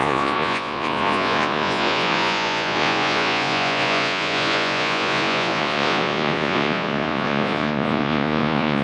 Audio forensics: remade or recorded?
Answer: remade